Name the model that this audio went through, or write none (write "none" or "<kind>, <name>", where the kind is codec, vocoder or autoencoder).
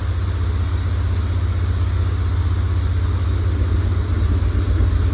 none